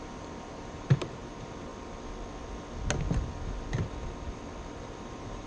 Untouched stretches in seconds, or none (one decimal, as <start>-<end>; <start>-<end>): 1.7-5.0